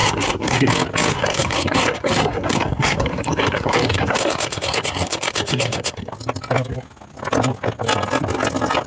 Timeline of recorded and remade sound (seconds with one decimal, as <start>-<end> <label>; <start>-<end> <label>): 0.0-0.7 remade; 0.7-1.1 recorded; 1.1-6.1 remade; 6.1-8.9 recorded